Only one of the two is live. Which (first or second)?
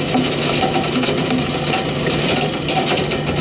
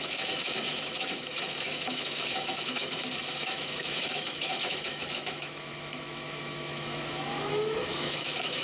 first